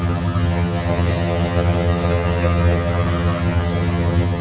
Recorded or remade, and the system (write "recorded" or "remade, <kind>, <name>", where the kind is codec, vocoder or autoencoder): remade, vocoder, HiFi-GAN